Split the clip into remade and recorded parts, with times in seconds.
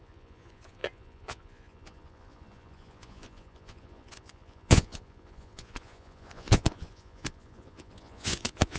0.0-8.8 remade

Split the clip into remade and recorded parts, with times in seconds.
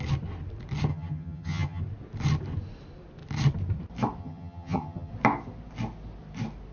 0.0-0.9 recorded; 0.9-1.8 remade; 1.8-4.2 recorded; 4.2-5.1 remade; 5.1-6.7 recorded